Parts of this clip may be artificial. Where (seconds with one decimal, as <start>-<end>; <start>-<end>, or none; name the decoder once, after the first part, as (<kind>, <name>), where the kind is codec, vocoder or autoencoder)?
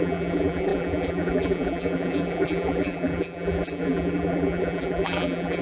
0.0-5.6 (vocoder, BigVGAN v2)